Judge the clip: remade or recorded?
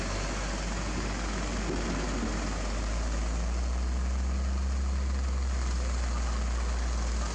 recorded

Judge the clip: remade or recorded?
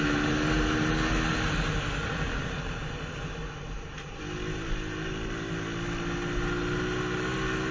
recorded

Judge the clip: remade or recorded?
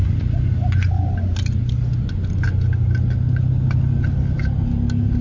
recorded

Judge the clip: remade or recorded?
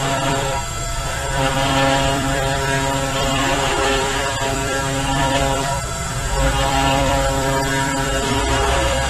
remade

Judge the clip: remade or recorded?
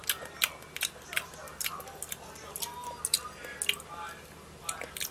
recorded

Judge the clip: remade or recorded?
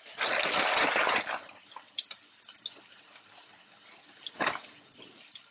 recorded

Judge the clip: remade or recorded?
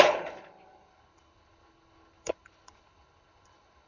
remade